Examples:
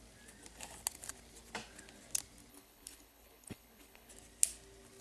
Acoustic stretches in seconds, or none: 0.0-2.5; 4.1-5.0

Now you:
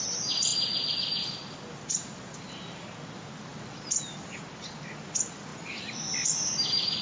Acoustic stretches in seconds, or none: 0.0-0.5; 2.5-7.0

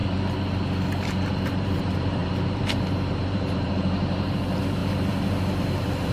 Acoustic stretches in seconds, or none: 0.0-1.3

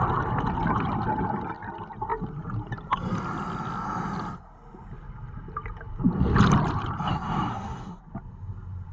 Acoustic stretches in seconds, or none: 0.0-7.5; 8.0-8.9

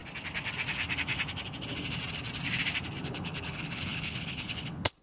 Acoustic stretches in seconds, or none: 0.0-3.0